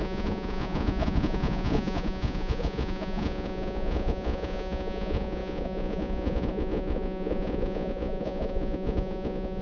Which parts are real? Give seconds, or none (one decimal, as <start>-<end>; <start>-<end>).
none